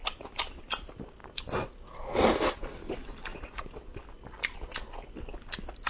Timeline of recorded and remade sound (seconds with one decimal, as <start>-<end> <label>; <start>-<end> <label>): 0.0-3.3 recorded; 3.3-3.8 remade; 3.8-5.9 recorded